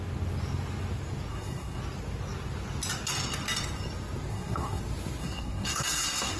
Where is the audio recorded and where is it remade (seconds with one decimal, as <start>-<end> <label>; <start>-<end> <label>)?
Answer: 0.0-1.3 recorded; 1.3-1.8 remade; 1.8-4.3 recorded; 4.3-4.8 remade; 4.8-5.2 recorded; 5.2-6.4 remade